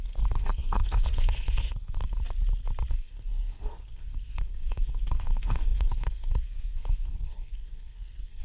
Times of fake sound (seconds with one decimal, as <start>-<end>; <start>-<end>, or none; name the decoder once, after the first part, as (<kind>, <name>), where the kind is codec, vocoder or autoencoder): 0.0-2.2 (codec, SNAC); 2.9-8.4